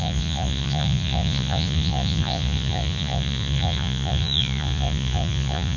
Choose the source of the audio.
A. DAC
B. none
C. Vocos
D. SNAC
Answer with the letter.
C